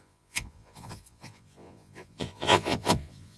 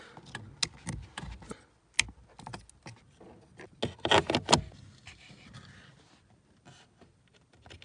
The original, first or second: second